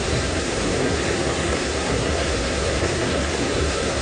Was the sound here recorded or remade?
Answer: remade